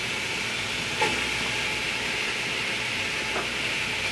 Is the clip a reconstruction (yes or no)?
no